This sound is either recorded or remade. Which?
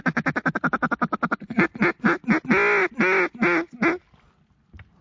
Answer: recorded